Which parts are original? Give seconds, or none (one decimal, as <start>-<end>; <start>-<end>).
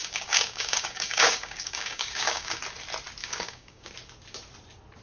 2.5-3.2; 3.9-5.0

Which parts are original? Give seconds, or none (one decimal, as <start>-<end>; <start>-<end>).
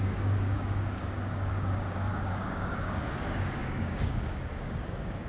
none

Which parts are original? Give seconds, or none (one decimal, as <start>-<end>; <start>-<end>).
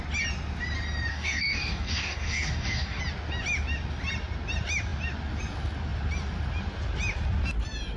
0.0-1.1; 3.0-8.0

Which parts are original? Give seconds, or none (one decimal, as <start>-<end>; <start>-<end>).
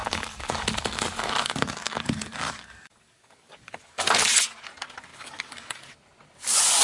4.1-5.1; 5.8-6.8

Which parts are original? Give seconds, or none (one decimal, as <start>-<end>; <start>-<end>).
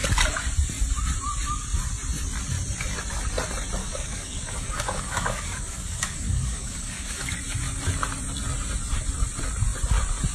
0.0-3.8; 7.3-10.3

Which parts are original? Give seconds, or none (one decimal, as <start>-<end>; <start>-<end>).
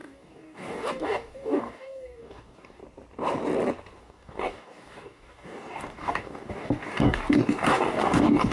2.8-4.0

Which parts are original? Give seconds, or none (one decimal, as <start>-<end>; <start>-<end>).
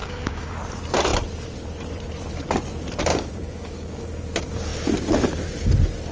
0.5-3.1; 4.1-6.1